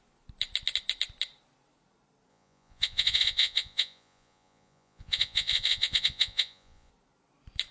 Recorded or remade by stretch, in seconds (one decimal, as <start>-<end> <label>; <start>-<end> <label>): 0.0-2.3 recorded; 2.3-6.9 remade; 6.9-7.7 recorded